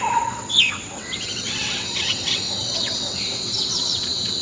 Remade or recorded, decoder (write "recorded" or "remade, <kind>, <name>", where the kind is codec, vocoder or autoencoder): remade, vocoder, WaveNeXt